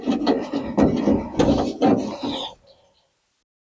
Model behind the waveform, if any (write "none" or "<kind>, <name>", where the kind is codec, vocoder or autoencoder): none